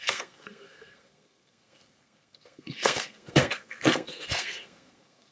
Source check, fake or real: fake